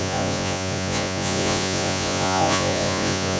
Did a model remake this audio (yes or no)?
yes